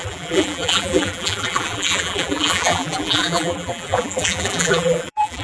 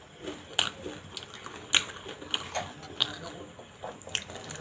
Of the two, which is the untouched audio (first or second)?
second